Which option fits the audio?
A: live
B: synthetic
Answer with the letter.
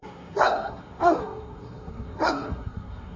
B